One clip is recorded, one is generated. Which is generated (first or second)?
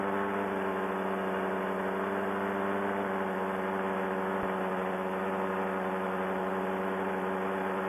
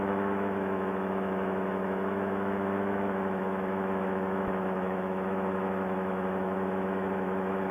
second